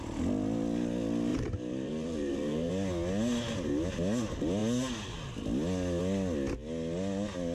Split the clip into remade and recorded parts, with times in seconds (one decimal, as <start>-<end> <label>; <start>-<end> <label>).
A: 0.0-1.3 recorded; 1.3-2.7 remade; 2.7-7.5 recorded